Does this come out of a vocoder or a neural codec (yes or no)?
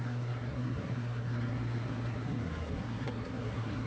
yes